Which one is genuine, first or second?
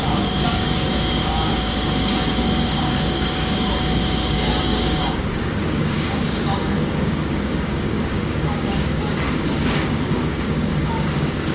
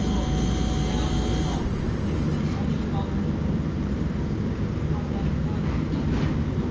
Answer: second